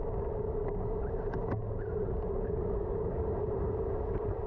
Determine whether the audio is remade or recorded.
remade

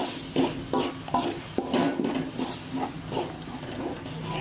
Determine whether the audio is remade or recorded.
recorded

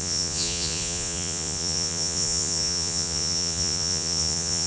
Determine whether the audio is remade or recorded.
remade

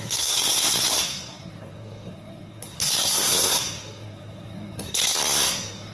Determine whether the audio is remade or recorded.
remade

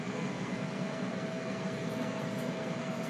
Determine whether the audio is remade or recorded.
remade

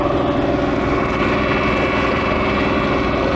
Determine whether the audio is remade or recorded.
recorded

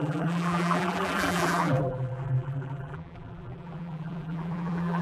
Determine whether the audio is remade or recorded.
remade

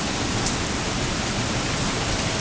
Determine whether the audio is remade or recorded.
recorded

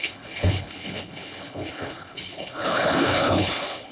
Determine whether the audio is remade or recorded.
remade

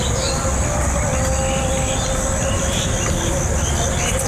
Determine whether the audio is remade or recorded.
recorded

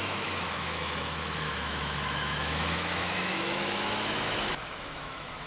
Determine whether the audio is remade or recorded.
remade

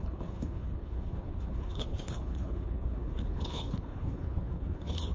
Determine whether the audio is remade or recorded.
remade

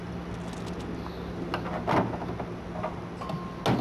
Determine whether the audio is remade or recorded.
recorded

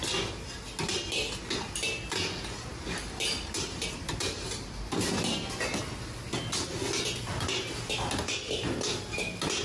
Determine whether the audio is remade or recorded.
recorded